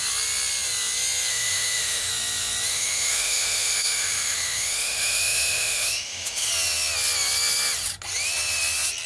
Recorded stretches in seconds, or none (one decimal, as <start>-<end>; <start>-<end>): 0.0-1.3; 2.1-2.7; 6.5-9.1